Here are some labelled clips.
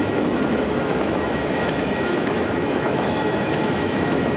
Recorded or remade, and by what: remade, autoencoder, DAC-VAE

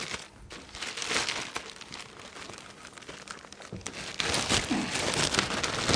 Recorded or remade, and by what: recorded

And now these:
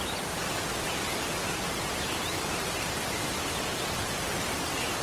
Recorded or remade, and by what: recorded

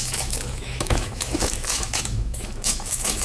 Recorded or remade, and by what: remade, autoencoder, DAC-VAE